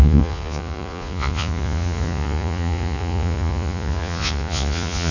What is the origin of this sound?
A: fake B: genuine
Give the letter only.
A